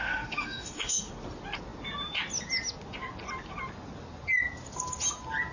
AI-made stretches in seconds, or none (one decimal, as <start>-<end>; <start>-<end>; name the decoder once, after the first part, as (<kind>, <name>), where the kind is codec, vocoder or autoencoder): 0.0-1.1 (autoencoder, DAC-VAE)